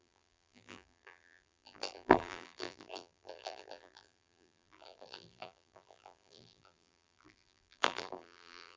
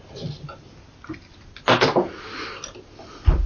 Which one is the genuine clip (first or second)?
second